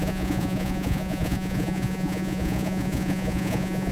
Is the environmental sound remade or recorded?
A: remade